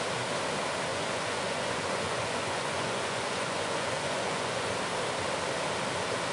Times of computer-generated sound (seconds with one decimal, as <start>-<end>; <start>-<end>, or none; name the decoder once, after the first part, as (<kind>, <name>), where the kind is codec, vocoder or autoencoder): 0.9-4.7 (vocoder, Vocos)